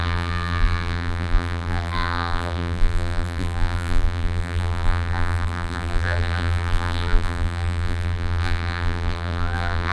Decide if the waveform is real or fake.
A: fake